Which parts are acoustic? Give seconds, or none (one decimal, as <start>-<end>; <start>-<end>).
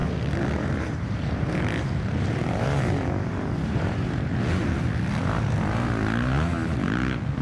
4.4-7.4